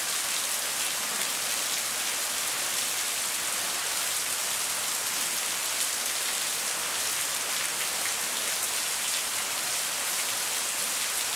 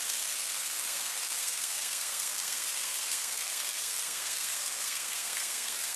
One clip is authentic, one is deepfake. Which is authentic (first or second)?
first